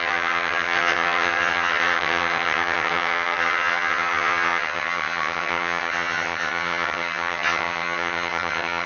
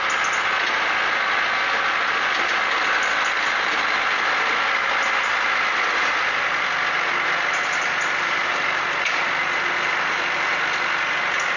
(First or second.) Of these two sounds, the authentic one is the second